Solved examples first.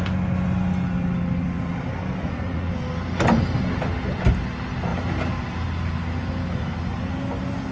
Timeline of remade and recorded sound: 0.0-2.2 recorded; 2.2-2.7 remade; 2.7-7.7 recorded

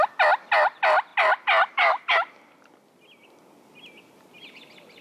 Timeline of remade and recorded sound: 0.0-5.0 recorded